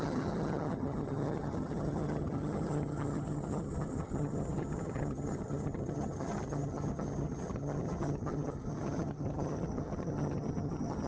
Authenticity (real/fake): fake